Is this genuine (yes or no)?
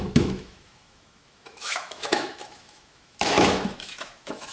no